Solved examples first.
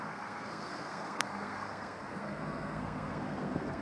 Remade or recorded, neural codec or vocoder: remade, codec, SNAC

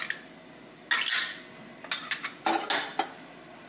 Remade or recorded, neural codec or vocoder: recorded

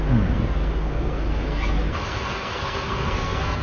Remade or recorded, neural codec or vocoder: remade, codec, SNAC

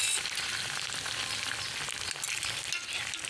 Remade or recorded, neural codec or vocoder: recorded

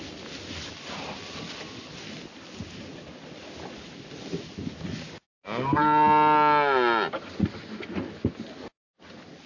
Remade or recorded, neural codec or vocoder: recorded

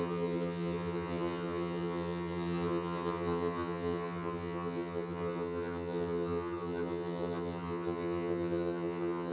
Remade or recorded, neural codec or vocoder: remade, vocoder, HiFi-GAN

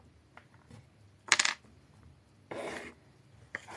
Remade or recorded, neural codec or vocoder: recorded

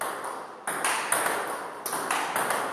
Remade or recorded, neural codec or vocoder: recorded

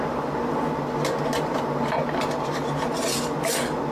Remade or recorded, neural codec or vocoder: recorded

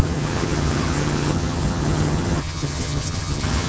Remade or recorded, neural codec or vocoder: remade, vocoder, HiFi-GAN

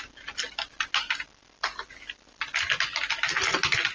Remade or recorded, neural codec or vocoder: recorded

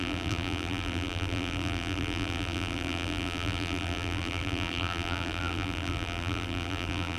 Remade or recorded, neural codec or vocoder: remade, vocoder, BigVGAN v2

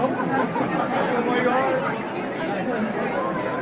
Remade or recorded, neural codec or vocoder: recorded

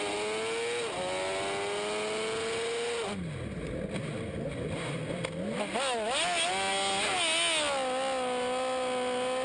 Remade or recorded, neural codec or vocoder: recorded